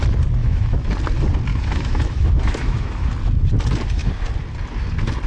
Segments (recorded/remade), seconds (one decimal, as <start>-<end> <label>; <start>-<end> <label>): 0.0-0.4 recorded; 0.4-0.9 remade; 0.9-1.5 recorded; 1.5-3.1 remade; 3.1-5.3 recorded